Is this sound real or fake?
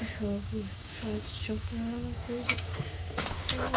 fake